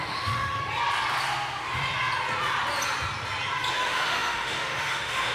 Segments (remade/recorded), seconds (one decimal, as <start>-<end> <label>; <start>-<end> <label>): 0.0-0.6 remade; 0.6-3.7 recorded; 3.7-5.3 remade